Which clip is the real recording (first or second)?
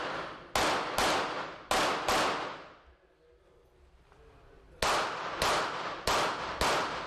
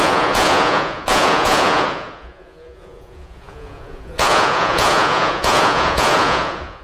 first